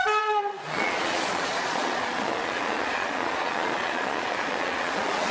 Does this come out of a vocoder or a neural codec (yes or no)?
yes